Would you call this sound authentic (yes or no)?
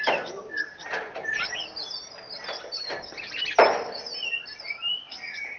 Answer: yes